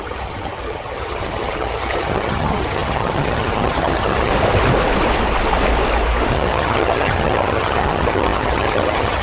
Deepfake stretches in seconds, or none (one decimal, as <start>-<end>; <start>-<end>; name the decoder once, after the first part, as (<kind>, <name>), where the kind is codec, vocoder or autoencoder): 0.0-4.3 (vocoder, HiFi-GAN); 6.3-9.2